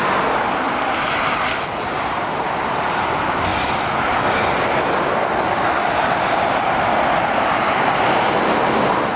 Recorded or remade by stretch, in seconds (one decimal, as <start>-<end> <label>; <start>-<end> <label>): 0.0-9.2 recorded

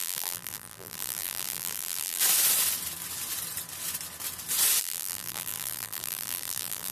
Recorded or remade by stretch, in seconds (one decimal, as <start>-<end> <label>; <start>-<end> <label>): 0.0-2.2 remade; 2.2-4.8 recorded; 4.8-6.9 remade

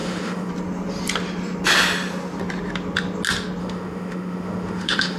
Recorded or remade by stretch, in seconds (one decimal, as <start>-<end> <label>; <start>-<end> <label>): 0.0-0.5 remade; 0.5-3.6 recorded; 3.6-5.2 remade